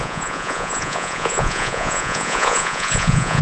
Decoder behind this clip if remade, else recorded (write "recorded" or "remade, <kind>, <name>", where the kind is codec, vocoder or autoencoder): remade, vocoder, Vocos